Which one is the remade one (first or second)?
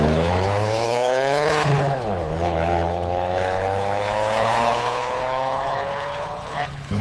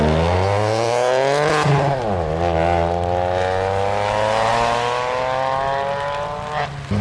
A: first